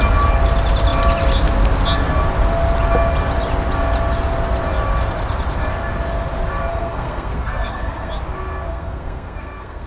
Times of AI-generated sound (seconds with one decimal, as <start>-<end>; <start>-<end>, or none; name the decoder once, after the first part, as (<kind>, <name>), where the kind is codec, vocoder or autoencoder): 6.7-8.1 (codec, SNAC); 8.7-9.9